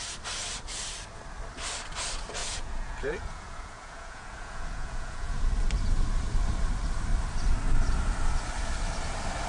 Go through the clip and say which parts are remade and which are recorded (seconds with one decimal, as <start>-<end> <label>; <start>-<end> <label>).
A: 0.0-2.4 recorded; 2.4-5.4 remade; 5.4-9.5 recorded